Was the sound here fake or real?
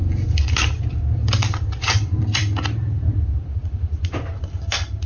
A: fake